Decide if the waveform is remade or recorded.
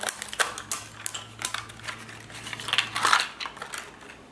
recorded